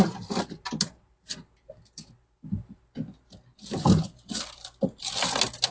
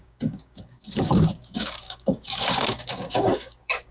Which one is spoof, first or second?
second